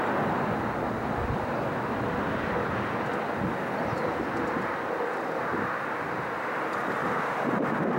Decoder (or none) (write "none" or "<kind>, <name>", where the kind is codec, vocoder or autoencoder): none